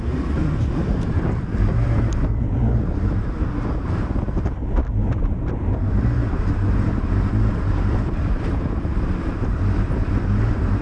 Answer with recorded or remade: recorded